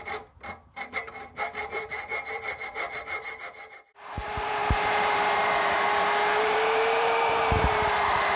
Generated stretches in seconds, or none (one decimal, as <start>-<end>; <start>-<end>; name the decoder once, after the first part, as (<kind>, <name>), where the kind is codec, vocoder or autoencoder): 0.0-8.4 (vocoder, BigVGAN v2)